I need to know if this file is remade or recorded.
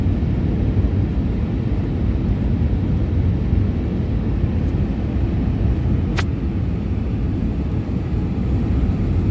recorded